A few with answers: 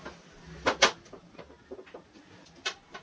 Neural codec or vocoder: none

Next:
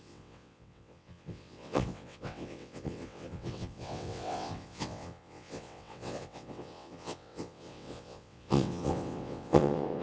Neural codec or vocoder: vocoder, WaveNeXt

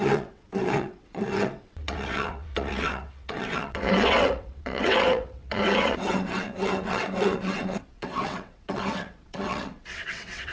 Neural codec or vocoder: vocoder, WaveNeXt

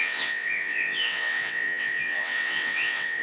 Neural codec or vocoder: vocoder, WaveNeXt